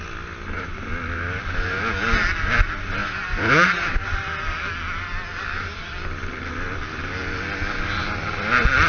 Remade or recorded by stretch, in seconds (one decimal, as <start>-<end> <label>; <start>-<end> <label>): 0.0-8.9 recorded